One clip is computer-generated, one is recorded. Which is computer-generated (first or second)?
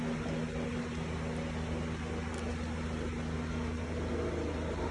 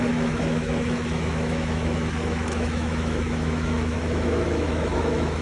second